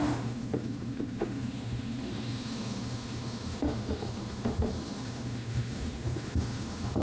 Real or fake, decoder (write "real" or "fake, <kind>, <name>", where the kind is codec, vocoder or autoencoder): fake, autoencoder, DAC-VAE